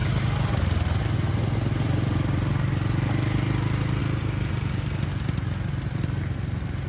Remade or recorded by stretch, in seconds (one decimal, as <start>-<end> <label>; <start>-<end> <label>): 0.0-6.9 recorded